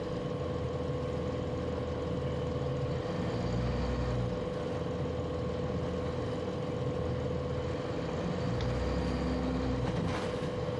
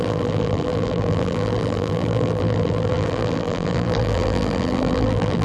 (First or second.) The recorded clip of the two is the first